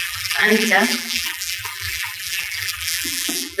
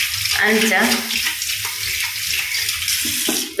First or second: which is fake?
first